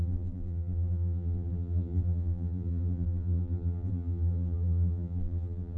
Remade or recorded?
remade